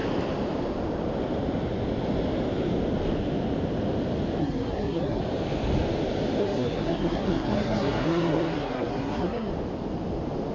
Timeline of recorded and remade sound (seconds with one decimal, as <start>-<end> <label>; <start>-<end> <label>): 0.0-4.4 recorded; 4.4-5.2 remade; 5.2-6.4 recorded; 6.4-9.5 remade; 9.5-10.5 recorded

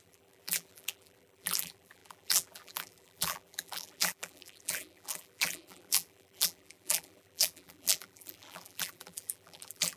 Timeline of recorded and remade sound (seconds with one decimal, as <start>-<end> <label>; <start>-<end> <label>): 0.0-10.0 remade

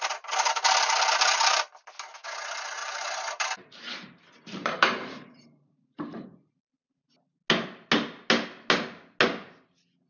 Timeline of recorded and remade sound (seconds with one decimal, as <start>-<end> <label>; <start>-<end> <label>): 0.0-2.8 recorded; 2.8-7.1 remade; 7.1-10.1 recorded

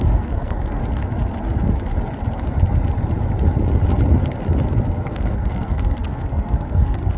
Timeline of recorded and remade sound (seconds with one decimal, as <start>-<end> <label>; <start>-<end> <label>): 0.0-0.8 remade; 0.8-4.9 recorded; 4.9-7.2 remade

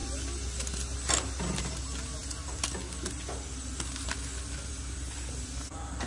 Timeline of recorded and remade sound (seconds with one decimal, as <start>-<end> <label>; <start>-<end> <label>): 0.0-6.1 recorded

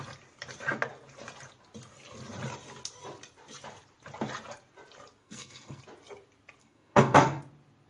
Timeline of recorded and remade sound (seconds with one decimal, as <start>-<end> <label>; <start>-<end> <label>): 0.0-5.2 recorded; 5.2-5.8 remade; 5.8-6.6 recorded; 6.6-7.4 remade; 7.4-7.9 recorded

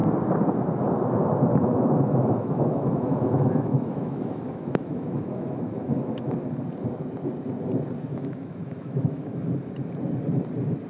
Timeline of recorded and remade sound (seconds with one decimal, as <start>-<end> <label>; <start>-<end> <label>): 0.0-1.5 recorded; 1.5-6.3 remade; 6.3-8.1 recorded; 8.1-9.5 remade; 9.5-10.9 recorded